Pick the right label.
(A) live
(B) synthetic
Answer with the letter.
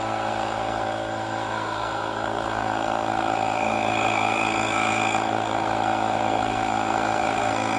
B